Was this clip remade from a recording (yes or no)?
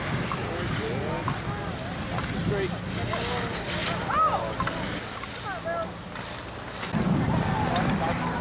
no